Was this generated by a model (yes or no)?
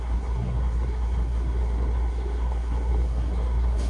yes